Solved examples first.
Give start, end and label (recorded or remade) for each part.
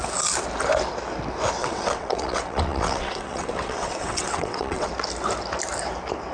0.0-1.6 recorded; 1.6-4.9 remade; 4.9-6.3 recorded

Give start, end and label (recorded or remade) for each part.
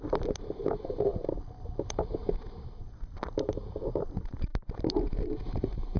0.0-1.1 remade; 1.1-2.8 recorded; 2.8-6.0 remade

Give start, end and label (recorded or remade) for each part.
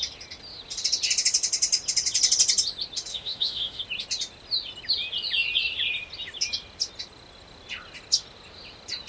0.0-3.1 recorded; 3.1-3.8 remade; 3.8-9.1 recorded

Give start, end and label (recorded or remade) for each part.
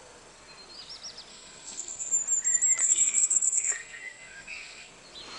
0.0-1.3 recorded; 1.3-2.1 remade; 2.1-2.8 recorded; 2.8-4.9 remade; 4.9-5.4 recorded